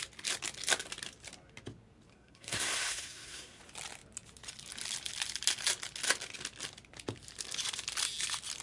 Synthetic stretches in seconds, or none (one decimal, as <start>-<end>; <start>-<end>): 2.1-3.6